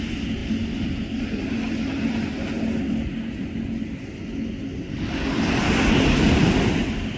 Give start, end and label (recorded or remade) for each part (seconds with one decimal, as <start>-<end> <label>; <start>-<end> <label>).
0.0-7.2 recorded